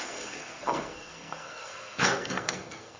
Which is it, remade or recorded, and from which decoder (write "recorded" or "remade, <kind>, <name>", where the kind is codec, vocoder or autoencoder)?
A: remade, codec, SNAC